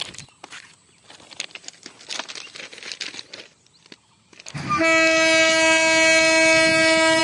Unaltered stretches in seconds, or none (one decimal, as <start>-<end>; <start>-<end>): 0.0-7.2